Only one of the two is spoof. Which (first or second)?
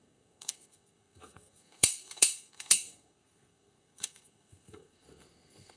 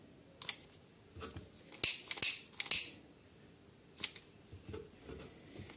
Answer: first